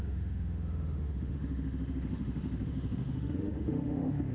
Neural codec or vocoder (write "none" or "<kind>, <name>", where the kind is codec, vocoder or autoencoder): autoencoder, DAC-VAE